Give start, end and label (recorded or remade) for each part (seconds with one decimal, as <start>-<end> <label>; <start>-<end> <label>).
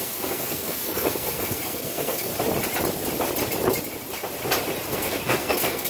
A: 0.0-2.3 remade; 2.3-4.9 recorded; 4.9-5.9 remade